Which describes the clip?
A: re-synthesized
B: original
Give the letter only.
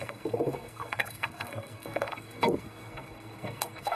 A